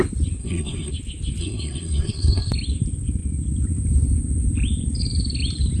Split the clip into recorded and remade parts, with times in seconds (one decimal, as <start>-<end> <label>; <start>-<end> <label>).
0.0-0.4 recorded; 0.4-0.9 remade; 0.9-1.4 recorded; 1.4-2.5 remade; 2.5-5.8 recorded